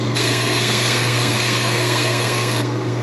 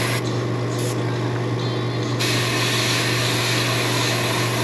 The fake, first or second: first